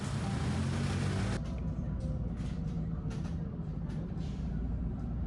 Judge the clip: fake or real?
real